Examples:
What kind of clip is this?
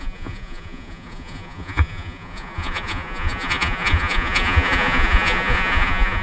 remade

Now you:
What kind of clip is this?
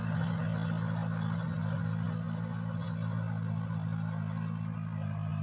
recorded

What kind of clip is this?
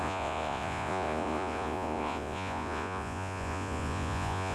remade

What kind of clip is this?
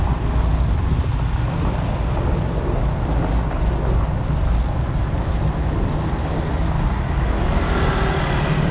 recorded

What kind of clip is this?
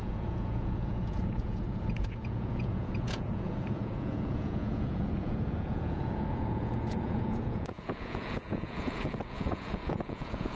remade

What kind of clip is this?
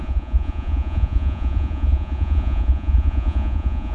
remade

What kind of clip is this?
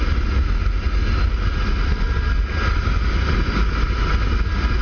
recorded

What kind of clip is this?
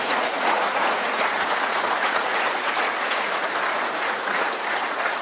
remade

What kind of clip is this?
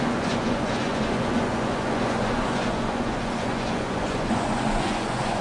remade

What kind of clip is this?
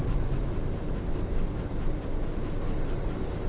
recorded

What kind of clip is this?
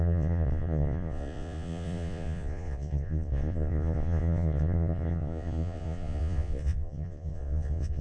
remade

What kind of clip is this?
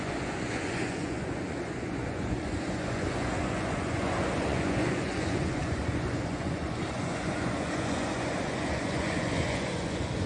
remade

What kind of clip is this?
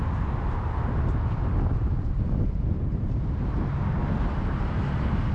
recorded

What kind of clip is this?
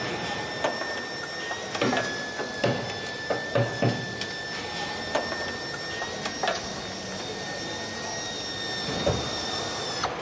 recorded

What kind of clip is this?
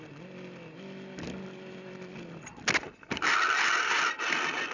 recorded